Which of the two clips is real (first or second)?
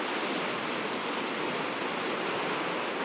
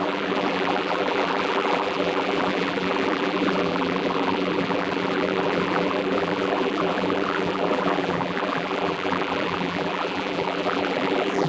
first